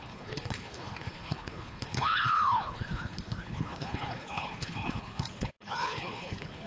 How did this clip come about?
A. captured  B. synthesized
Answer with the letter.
B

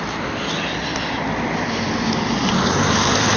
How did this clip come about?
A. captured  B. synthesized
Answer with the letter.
A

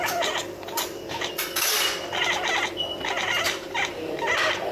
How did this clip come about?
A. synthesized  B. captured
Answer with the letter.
B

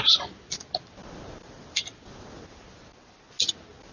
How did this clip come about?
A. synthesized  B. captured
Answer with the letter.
B